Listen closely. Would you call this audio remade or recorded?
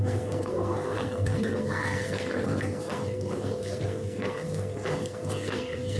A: remade